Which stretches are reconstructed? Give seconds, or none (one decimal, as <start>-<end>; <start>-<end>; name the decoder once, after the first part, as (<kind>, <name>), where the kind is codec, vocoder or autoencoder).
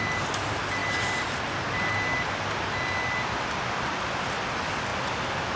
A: none